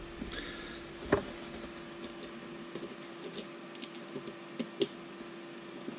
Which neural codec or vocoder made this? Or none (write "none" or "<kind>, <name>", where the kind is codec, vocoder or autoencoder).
none